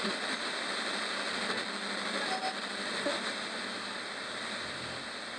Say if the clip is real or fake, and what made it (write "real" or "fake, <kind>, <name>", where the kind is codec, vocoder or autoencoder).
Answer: real